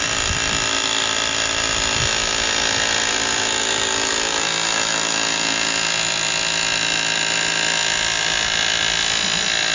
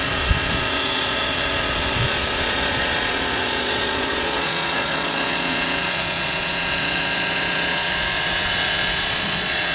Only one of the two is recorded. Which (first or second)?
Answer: first